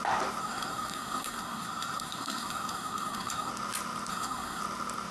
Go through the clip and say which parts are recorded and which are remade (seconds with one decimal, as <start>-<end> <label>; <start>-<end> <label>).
0.0-0.4 recorded; 0.4-3.5 remade; 3.5-4.1 recorded; 4.1-4.6 remade; 4.6-5.1 recorded